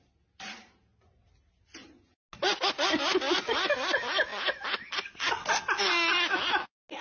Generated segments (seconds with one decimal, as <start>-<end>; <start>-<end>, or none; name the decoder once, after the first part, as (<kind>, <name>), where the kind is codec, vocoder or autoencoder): none